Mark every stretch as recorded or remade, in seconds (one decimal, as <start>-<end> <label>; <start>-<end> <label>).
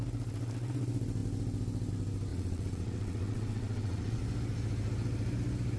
0.0-2.3 recorded; 2.3-4.2 remade; 4.2-5.8 recorded